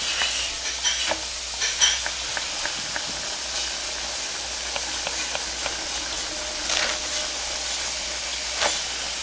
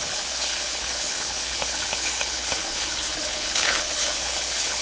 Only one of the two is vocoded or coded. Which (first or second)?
second